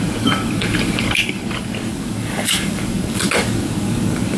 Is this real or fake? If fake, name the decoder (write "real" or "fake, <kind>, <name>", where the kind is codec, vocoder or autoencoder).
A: fake, codec, DAC